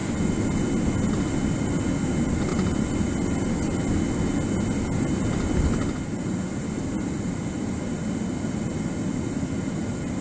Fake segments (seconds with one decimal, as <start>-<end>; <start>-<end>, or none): none